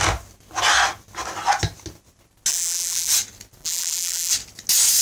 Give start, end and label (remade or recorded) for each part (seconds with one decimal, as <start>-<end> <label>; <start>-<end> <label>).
0.0-2.5 recorded; 2.5-3.1 remade; 3.1-3.6 recorded; 3.6-4.3 remade; 4.3-5.0 recorded